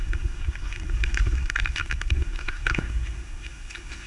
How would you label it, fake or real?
fake